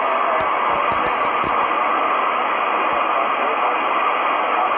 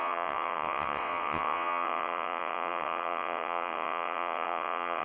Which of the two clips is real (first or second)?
first